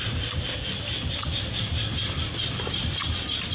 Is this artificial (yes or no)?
no